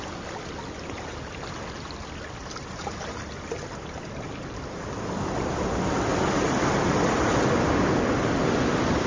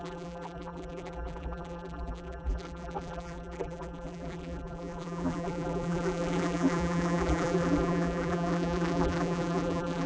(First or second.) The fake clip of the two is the second